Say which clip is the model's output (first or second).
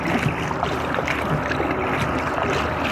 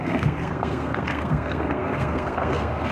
second